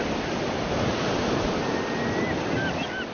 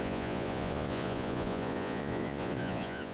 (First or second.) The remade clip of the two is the second